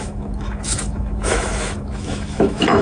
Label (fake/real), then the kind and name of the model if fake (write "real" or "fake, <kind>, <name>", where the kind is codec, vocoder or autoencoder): fake, autoencoder, DAC-VAE